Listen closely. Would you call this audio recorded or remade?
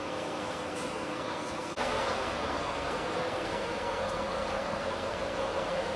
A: remade